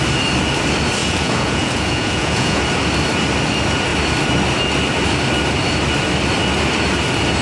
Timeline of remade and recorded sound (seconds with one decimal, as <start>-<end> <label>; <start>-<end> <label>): 0.0-1.0 recorded; 1.0-2.6 remade; 2.6-7.4 recorded